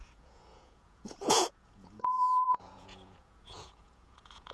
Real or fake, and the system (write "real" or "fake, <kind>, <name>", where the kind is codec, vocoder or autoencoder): fake, vocoder, Vocos